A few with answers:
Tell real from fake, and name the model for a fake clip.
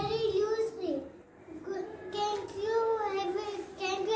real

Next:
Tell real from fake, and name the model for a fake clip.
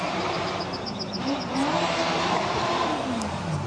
fake, vocoder, BigVGAN v2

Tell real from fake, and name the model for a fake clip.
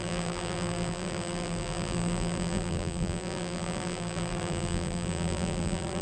fake, vocoder, BigVGAN v2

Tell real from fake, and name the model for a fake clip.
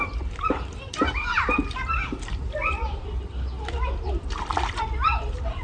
fake, vocoder, BigVGAN v2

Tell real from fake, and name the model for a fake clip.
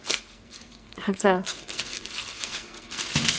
fake, codec, SNAC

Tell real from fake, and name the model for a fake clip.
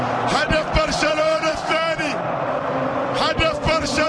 fake, vocoder, BigVGAN v2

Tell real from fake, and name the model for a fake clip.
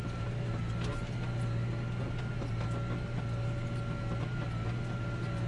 real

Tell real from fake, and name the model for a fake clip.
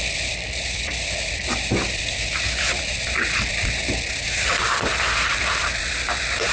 fake, vocoder, BigVGAN v2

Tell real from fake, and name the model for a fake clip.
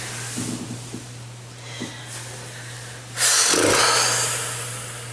real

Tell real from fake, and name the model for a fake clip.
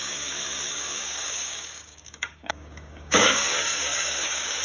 fake, codec, DAC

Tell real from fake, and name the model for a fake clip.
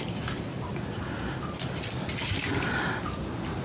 real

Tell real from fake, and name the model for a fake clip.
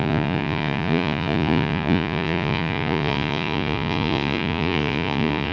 fake, vocoder, Vocos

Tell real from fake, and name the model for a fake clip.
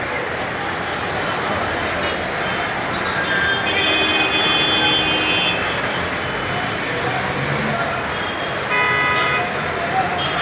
real